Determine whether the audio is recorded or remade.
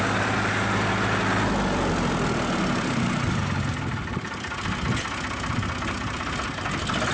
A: recorded